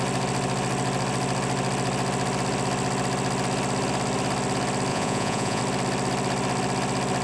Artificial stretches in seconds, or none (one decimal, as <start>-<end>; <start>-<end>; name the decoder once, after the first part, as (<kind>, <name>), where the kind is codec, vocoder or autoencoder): 4.9-5.6 (vocoder, Vocos)